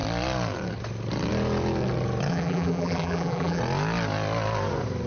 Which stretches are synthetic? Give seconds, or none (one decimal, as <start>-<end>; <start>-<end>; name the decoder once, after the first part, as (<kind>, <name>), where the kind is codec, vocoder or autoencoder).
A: 2.3-3.6 (vocoder, BigVGAN v2)